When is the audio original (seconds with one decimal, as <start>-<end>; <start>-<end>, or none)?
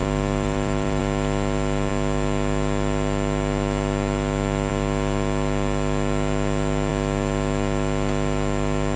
1.0-9.0